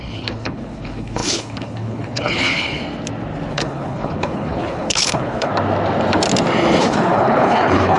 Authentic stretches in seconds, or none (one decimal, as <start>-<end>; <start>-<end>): 2.8-3.5; 5.5-6.8